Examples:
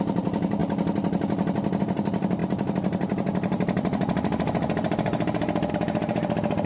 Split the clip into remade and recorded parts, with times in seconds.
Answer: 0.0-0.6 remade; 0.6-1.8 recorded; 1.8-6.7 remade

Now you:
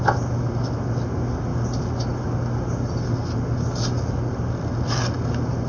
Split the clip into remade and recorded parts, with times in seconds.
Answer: 0.0-5.7 recorded